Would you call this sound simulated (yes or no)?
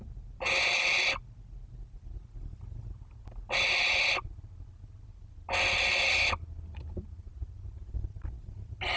no